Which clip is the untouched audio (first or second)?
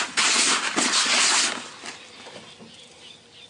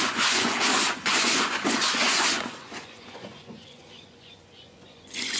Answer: first